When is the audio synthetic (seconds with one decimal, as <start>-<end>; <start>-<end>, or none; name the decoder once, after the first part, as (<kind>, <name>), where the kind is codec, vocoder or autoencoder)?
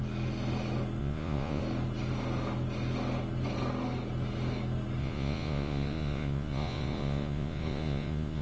1.0-1.6 (vocoder, Vocos); 5.0-8.4